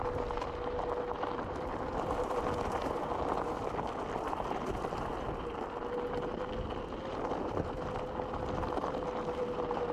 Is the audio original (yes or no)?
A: yes